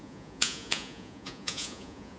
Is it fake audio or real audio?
fake